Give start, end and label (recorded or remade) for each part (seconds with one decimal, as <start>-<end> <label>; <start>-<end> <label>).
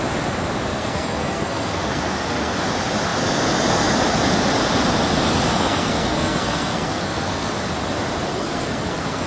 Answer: 0.0-0.7 recorded; 0.7-2.6 remade; 2.6-5.5 recorded; 5.5-7.5 remade; 7.5-8.3 recorded; 8.3-9.3 remade